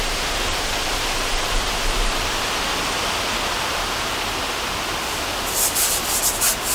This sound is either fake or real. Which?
real